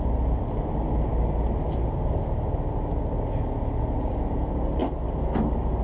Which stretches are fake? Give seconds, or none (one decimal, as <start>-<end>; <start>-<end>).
none